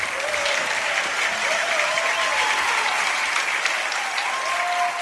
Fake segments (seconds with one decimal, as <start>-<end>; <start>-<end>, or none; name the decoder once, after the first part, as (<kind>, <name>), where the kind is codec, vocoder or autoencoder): 0.4-3.4 (vocoder, BigVGAN v2)